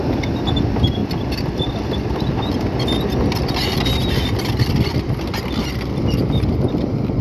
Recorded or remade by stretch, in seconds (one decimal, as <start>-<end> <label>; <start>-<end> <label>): 0.0-1.0 recorded; 1.0-1.7 remade; 1.7-4.0 recorded; 4.0-6.0 remade; 6.0-7.2 recorded